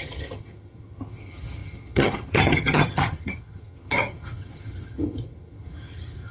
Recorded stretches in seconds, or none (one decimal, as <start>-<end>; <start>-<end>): none